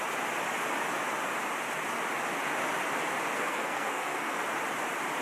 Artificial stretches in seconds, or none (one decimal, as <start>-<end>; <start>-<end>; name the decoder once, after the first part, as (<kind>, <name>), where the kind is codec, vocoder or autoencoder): 3.3-4.4 (codec, SNAC)